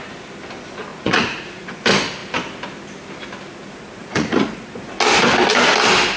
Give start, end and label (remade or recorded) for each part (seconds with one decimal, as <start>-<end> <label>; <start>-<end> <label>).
0.0-0.9 recorded; 0.9-1.8 remade; 1.8-4.0 recorded; 4.0-4.5 remade; 4.5-6.2 recorded